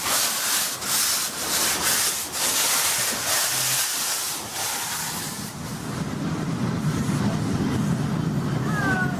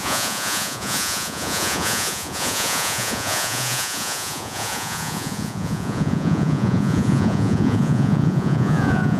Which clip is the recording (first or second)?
first